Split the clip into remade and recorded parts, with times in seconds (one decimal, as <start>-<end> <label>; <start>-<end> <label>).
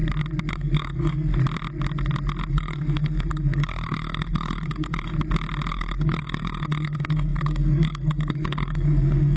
0.0-0.5 recorded; 0.5-1.3 remade; 1.3-2.5 recorded; 2.5-5.1 remade; 5.1-5.7 recorded; 5.7-9.4 remade